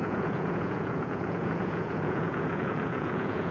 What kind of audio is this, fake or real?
fake